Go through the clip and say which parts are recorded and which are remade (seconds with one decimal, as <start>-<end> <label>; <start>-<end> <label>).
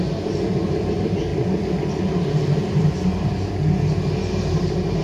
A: 0.0-1.3 remade; 1.3-2.6 recorded; 2.6-3.3 remade; 3.3-4.5 recorded; 4.5-5.0 remade